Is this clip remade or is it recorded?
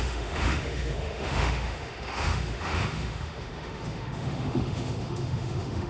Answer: remade